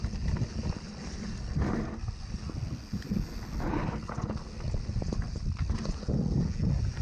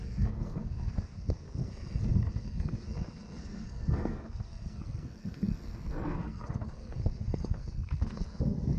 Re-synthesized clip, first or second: second